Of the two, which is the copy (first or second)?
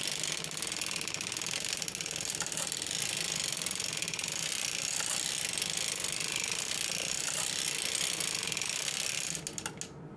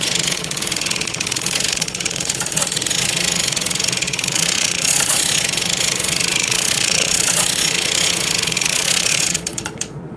second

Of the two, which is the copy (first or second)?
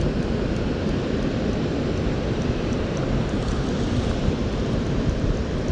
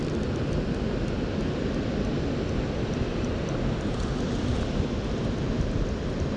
first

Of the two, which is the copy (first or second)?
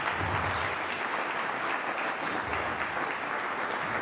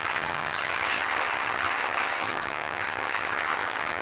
second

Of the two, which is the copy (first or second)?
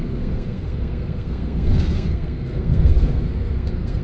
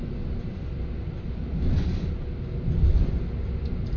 first